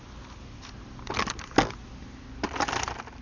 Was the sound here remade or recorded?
recorded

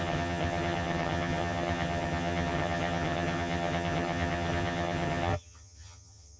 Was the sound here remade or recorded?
remade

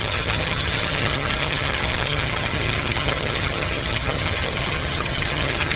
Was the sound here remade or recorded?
remade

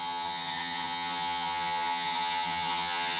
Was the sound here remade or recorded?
remade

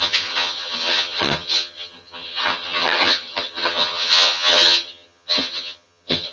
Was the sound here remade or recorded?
remade